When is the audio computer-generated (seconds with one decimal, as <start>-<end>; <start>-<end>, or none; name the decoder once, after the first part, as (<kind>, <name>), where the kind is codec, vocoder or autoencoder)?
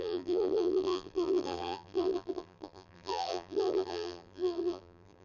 0.0-5.2 (vocoder, BigVGAN v2)